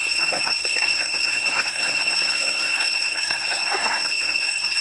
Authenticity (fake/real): fake